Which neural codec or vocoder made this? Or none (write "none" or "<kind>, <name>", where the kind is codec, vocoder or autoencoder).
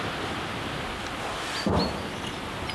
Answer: none